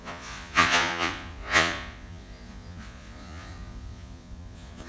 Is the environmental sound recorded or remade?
remade